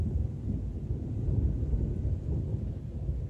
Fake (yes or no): no